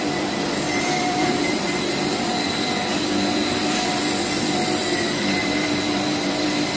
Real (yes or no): no